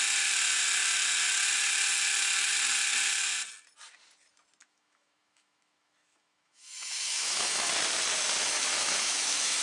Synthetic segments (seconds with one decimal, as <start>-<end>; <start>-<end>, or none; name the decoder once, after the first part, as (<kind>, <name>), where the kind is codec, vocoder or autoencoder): 4.6-7.7 (autoencoder, DAC-VAE); 8.4-9.6